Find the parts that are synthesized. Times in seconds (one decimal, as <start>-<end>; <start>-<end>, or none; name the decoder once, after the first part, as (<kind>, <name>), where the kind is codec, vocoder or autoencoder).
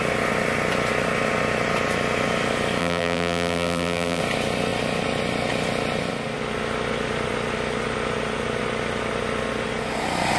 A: 2.8-4.2 (vocoder, BigVGAN v2)